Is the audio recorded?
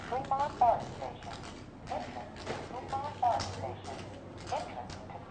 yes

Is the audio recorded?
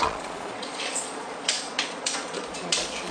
no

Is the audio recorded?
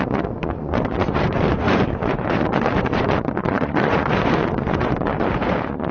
no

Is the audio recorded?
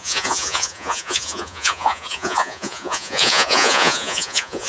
no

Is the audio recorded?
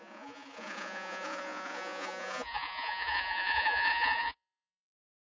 no